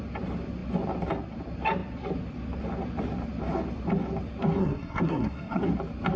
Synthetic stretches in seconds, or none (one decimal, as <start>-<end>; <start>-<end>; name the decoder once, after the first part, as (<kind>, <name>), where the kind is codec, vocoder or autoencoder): 4.6-5.6 (codec, SNAC)